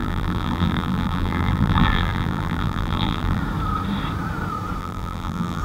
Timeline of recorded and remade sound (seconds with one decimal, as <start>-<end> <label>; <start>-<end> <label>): 0.0-3.4 remade; 3.4-4.8 recorded; 4.8-5.6 remade